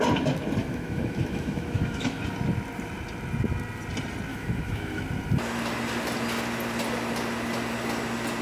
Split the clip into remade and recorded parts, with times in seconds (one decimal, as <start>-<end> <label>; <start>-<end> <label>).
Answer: 0.0-0.6 recorded; 0.6-2.2 remade; 2.2-4.3 recorded; 4.3-5.0 remade; 5.0-8.4 recorded